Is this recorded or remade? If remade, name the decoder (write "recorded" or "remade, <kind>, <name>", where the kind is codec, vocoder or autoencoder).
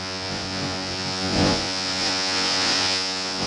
remade, vocoder, Vocos